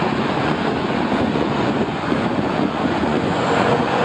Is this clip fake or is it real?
fake